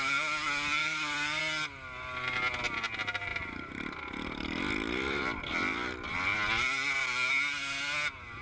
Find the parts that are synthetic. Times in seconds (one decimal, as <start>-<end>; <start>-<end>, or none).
0.8-1.4; 3.3-5.5